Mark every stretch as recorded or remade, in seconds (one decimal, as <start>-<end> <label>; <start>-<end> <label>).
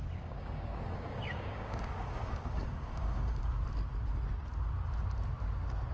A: 0.0-3.5 remade; 3.5-5.9 recorded